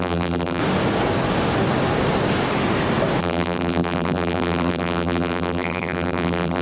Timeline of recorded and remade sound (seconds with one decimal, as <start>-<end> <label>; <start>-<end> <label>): 0.0-0.6 remade; 0.6-3.2 recorded; 3.2-6.6 remade